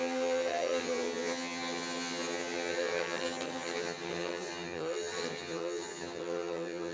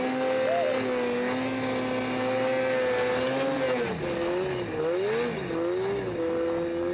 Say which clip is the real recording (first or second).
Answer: second